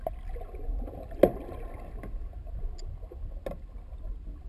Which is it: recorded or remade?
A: recorded